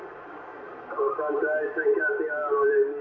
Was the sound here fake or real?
real